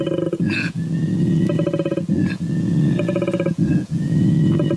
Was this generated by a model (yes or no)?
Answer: yes